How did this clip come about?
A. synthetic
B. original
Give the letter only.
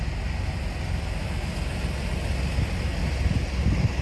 B